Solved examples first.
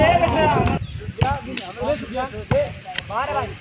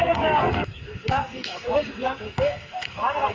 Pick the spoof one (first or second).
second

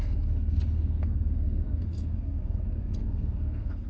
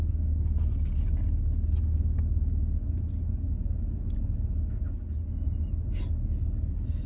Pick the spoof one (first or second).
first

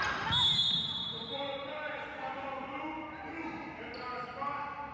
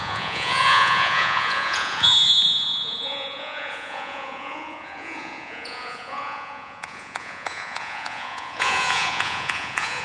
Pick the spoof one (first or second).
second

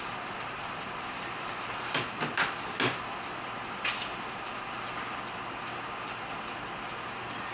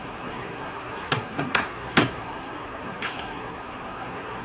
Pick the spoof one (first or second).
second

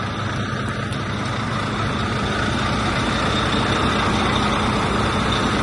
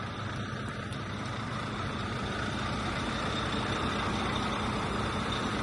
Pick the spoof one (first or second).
second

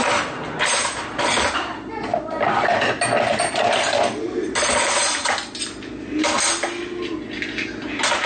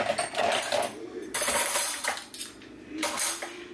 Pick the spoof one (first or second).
second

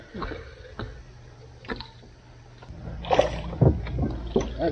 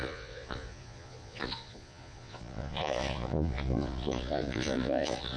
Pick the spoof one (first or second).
second